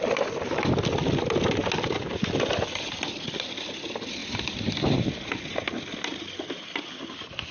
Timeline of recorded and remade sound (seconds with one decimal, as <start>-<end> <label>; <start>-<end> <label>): 0.0-7.5 recorded